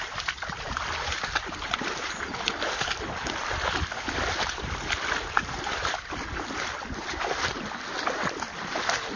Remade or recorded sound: remade